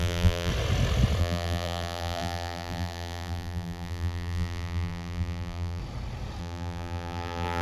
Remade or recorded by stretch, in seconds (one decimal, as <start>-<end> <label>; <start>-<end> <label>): 0.0-0.5 remade; 0.5-1.2 recorded; 1.2-5.8 remade; 5.8-6.4 recorded; 6.4-7.6 remade